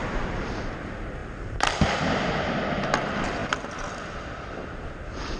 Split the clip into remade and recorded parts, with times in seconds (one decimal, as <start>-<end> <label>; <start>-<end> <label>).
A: 0.0-1.2 recorded; 1.2-1.8 remade; 1.8-5.4 recorded